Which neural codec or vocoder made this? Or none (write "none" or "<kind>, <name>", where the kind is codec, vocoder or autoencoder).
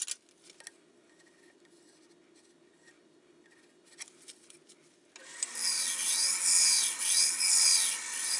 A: none